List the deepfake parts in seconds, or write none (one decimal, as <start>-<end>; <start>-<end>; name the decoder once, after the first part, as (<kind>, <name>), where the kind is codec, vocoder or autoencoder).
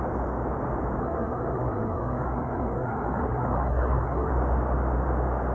1.0-4.3 (codec, SNAC)